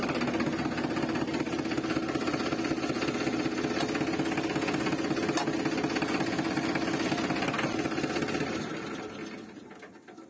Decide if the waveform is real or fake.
real